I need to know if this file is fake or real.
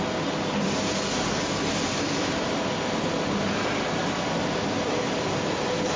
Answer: real